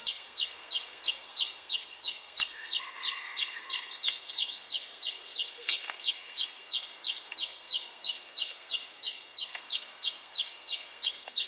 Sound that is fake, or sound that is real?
fake